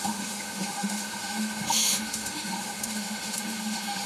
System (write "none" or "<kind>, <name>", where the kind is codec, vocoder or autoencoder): autoencoder, DAC-VAE